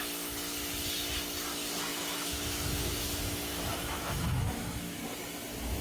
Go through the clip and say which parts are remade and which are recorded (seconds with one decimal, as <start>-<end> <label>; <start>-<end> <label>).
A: 0.0-1.9 recorded; 1.9-5.0 remade; 5.0-5.8 recorded